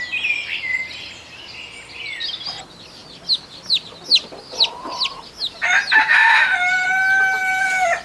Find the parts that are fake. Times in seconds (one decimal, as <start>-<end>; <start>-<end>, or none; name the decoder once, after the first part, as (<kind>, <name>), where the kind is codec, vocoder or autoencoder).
none